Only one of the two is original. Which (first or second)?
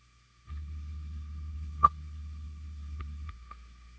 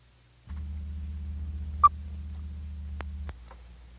second